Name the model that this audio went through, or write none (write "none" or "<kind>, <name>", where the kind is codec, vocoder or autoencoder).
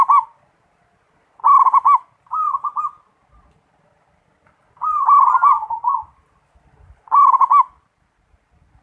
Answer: none